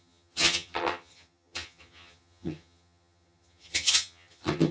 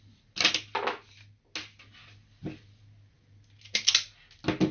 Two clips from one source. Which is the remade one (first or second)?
first